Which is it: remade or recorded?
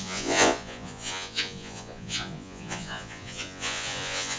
remade